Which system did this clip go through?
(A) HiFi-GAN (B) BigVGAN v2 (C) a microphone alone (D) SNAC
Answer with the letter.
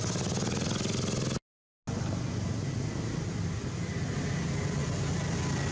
C